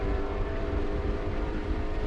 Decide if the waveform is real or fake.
fake